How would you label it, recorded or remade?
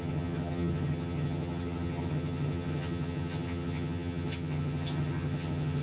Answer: remade